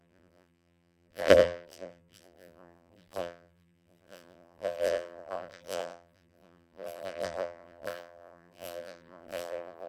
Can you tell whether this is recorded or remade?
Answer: remade